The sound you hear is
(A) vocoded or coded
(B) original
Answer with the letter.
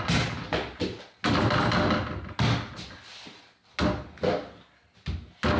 B